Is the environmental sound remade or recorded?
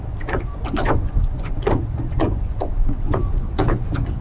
remade